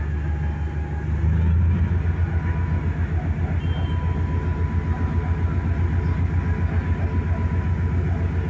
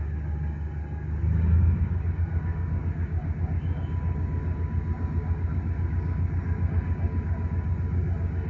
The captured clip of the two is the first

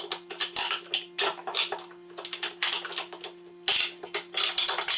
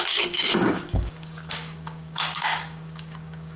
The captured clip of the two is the first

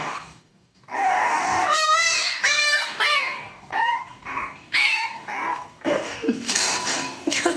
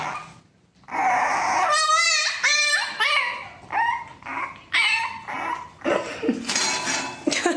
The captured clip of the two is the second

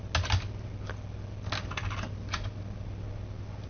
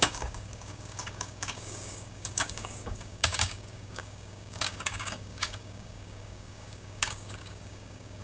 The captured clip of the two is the first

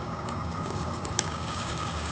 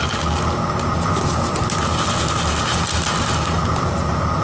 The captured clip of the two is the second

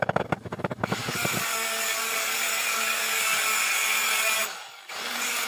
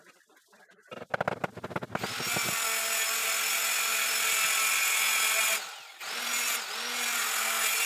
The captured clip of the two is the second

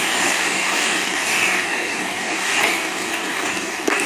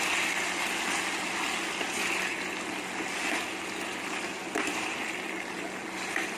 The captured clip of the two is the second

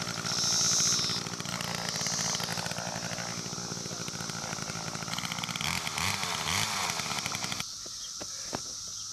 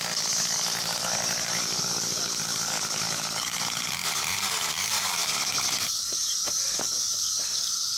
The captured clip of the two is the first